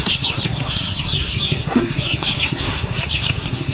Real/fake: fake